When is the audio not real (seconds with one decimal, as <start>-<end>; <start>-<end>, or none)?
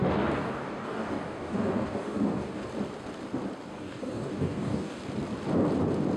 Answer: 0.0-2.7; 3.7-5.0